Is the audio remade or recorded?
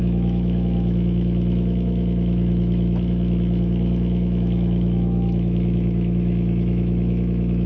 remade